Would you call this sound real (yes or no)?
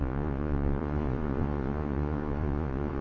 no